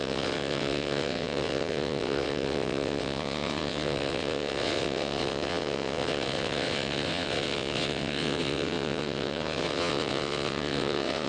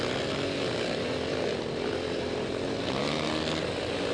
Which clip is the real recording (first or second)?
second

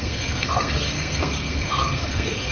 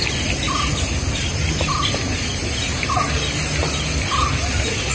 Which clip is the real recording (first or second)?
second